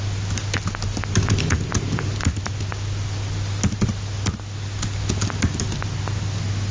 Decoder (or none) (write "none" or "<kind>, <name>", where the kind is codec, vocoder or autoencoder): none